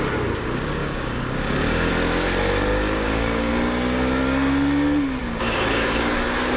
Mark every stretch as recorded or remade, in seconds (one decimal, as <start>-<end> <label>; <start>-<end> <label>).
0.0-0.8 recorded; 0.8-1.9 remade; 1.9-2.7 recorded; 2.7-3.5 remade; 3.5-5.2 recorded; 5.2-6.1 remade; 6.1-6.6 recorded

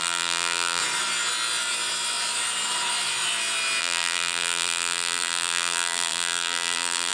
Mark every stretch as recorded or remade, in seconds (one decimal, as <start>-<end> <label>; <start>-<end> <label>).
0.0-0.8 remade; 0.8-3.8 recorded; 3.8-7.1 remade

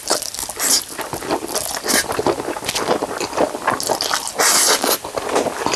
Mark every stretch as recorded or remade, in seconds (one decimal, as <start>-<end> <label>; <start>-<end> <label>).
0.0-5.8 recorded

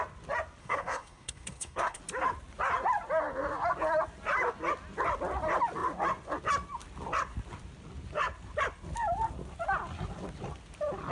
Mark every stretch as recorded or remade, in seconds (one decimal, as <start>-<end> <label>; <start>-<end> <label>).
0.0-0.6 recorded; 0.6-2.0 remade; 2.0-11.1 recorded

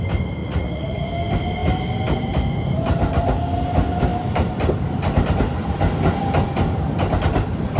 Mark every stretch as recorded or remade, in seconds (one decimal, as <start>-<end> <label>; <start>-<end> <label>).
0.0-0.4 recorded; 0.4-1.1 remade; 1.1-7.8 recorded

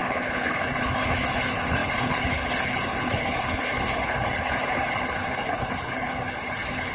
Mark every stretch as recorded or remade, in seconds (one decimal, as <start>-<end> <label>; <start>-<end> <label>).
0.0-6.9 remade

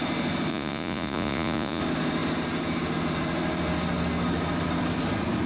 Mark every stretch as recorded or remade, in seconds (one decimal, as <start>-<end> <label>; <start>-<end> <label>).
0.0-0.5 recorded; 0.5-1.8 remade; 1.8-5.5 recorded